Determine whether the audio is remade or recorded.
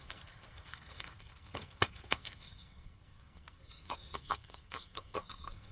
remade